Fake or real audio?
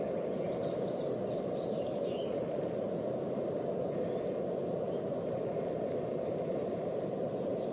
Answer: fake